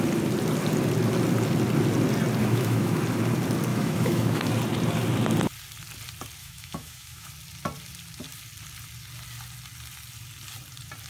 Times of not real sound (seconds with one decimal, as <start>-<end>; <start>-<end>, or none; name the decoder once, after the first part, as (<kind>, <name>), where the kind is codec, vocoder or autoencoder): 2.4-3.0 (autoencoder, DAC-VAE); 3.7-4.5; 6.4-7.3

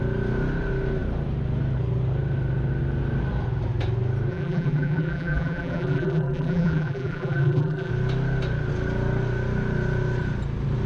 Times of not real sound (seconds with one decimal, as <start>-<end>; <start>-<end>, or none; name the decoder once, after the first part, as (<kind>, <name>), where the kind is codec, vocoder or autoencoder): 4.3-7.9 (vocoder, BigVGAN v2)

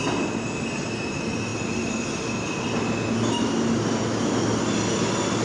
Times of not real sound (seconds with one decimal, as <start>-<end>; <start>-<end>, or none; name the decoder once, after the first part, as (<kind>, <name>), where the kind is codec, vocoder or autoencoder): none

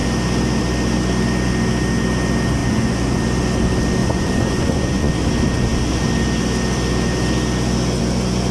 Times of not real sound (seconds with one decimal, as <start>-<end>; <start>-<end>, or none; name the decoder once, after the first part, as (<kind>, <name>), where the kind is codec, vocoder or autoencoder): 2.6-3.2 (vocoder, Vocos); 4.0-5.1

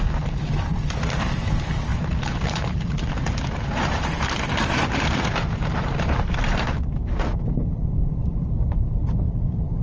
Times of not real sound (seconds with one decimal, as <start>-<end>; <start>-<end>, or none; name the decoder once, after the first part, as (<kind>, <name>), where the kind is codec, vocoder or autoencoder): 1.9-6.8 (vocoder, BigVGAN v2); 9.0-9.8

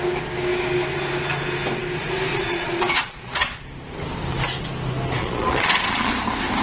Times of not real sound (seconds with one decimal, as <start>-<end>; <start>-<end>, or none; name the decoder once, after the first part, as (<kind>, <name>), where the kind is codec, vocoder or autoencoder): 2.3-3.6 (vocoder, Vocos); 5.2-6.1

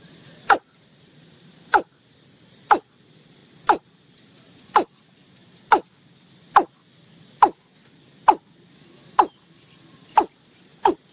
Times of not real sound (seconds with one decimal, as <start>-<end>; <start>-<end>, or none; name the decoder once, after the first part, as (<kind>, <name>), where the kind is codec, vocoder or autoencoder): 0.0-5.4 (vocoder, BigVGAN v2); 8.7-11.1

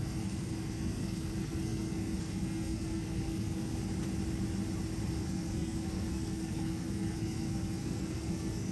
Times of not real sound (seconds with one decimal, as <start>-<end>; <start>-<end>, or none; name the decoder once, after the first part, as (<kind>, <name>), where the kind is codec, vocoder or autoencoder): 0.0-3.7 (codec, SNAC); 5.2-8.7